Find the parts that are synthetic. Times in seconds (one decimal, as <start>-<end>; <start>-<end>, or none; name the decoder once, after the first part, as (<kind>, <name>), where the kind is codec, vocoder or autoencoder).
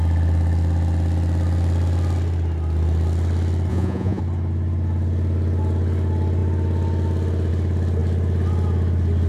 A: 3.7-4.2 (vocoder, Vocos)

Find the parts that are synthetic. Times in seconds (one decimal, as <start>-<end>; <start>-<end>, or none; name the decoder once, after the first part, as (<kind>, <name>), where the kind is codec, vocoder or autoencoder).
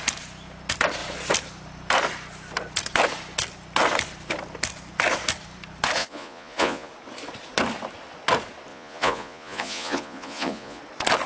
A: 6.0-6.9 (vocoder, Vocos); 8.7-10.8